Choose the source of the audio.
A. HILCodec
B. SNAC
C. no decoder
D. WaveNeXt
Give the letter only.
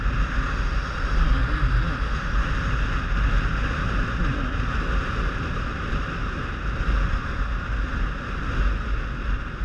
C